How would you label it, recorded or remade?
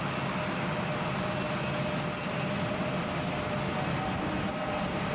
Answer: recorded